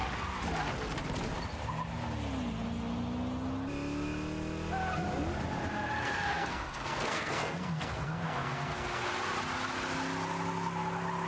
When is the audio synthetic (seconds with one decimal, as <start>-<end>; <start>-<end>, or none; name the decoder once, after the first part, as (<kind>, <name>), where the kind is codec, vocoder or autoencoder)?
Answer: 6.0-9.1 (codec, SNAC)